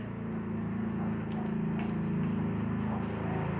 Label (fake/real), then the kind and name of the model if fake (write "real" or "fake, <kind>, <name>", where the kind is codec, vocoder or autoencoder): real